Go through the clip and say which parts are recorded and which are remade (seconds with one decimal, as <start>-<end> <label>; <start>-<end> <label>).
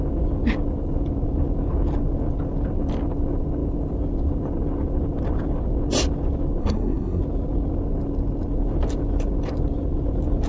0.0-6.6 recorded; 6.6-7.2 remade; 7.2-10.5 recorded